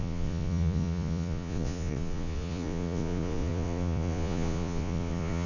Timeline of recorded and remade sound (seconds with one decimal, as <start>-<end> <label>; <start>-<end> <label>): 0.0-5.5 remade